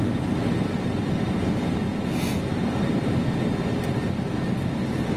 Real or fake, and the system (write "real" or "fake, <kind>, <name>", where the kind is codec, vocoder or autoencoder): real